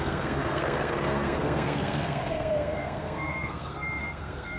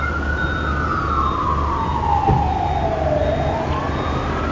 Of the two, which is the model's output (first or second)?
first